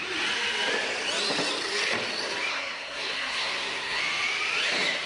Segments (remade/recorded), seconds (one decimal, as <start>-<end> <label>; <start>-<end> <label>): 0.0-2.5 recorded; 2.5-4.0 remade; 4.0-5.1 recorded